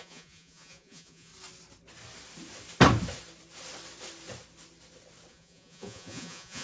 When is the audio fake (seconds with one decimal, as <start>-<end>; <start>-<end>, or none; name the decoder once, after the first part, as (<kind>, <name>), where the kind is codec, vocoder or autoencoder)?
0.0-1.3 (vocoder, Vocos); 5.3-6.6